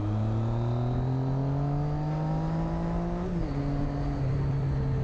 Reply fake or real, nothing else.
real